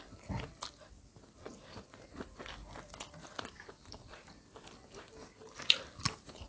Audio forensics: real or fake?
real